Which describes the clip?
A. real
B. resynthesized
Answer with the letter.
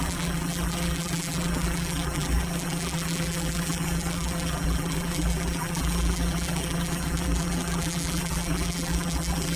B